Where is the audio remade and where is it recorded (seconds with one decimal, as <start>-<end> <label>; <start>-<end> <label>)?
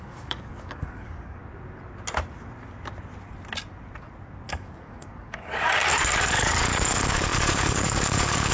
0.0-1.4 remade; 1.4-4.5 recorded; 4.5-8.5 remade